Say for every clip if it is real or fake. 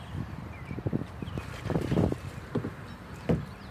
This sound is fake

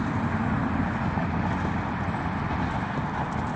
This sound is real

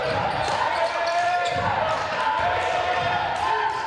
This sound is fake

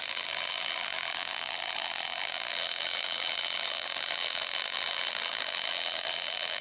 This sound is fake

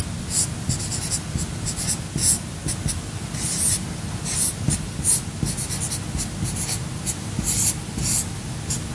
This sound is real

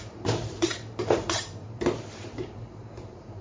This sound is fake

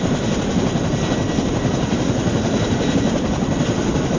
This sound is real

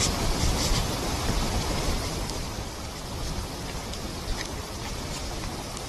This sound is real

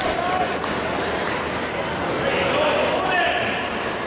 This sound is real